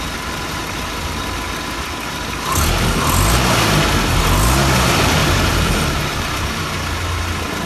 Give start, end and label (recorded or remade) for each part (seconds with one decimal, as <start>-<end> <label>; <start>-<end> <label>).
0.0-5.2 recorded; 5.2-6.5 remade; 6.5-7.7 recorded